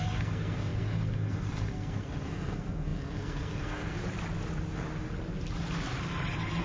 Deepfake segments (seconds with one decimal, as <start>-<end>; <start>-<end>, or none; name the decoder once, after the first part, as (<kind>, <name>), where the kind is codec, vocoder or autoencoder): 0.0-4.0 (codec, SNAC)